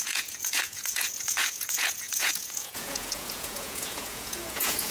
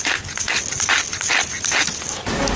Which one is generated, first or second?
first